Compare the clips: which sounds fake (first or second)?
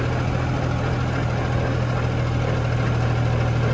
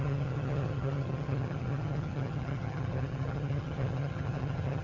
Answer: second